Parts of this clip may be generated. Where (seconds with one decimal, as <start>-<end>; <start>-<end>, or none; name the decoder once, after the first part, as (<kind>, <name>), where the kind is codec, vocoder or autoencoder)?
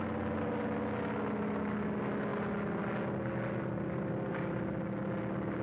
none